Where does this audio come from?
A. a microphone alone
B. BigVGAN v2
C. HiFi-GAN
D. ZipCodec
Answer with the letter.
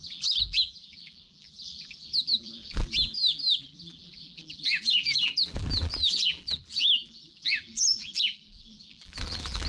B